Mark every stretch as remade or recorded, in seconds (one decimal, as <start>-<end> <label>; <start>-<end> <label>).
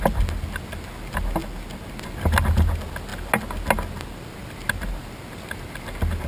0.0-6.3 recorded